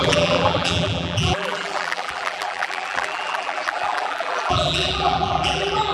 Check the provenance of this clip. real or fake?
fake